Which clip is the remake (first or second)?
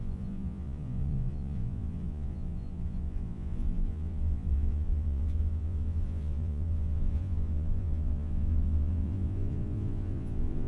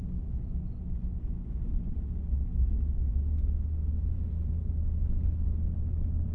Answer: first